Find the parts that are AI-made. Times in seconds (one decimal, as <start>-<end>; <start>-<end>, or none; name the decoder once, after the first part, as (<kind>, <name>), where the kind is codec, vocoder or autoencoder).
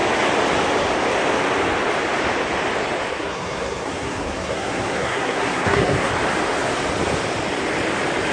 3.1-6.1 (codec, SNAC)